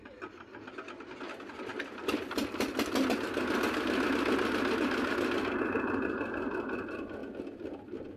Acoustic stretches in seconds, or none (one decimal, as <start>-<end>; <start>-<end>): 0.0-8.2